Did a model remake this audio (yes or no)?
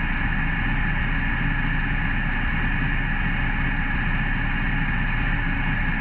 no